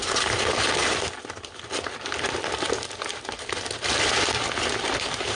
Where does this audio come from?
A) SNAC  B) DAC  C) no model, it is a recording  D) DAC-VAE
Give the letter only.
C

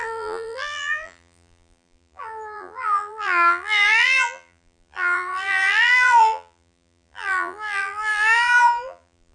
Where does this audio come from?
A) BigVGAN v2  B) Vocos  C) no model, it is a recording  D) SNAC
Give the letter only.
A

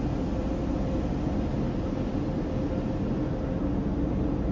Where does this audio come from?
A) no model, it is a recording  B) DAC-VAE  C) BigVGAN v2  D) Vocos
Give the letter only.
A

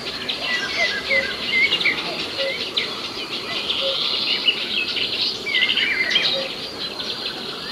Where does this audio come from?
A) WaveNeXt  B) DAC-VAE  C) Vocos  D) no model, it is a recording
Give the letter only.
D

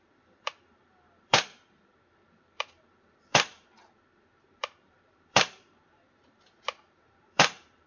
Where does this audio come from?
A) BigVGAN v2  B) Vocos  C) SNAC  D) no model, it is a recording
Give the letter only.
A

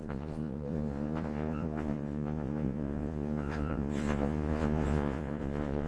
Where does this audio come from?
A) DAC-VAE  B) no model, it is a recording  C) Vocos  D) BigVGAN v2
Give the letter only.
C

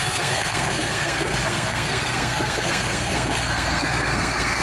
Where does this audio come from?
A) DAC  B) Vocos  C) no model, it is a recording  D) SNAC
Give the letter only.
D